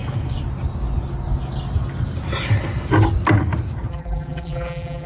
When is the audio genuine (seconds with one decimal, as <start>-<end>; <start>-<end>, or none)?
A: 0.0-3.9